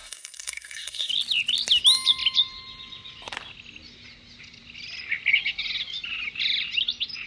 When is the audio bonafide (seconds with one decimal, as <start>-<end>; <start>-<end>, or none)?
1.1-7.3